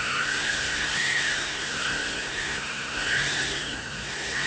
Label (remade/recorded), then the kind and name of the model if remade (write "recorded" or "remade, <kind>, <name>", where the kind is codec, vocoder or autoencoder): remade, codec, SNAC